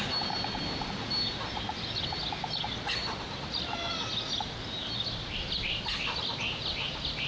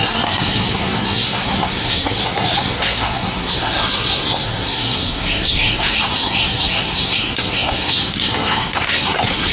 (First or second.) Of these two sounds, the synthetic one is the second